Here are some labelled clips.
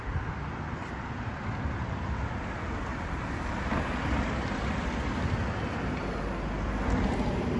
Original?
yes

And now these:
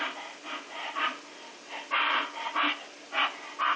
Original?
yes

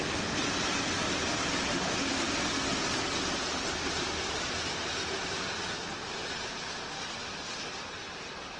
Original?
yes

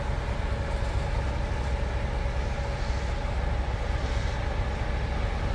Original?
yes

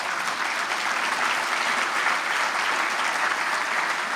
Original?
yes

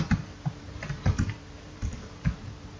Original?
no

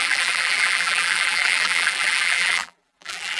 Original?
no